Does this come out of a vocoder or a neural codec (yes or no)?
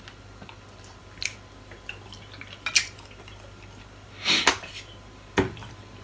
no